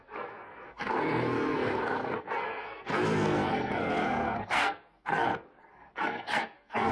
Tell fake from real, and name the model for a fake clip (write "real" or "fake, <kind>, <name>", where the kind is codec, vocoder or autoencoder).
fake, codec, SNAC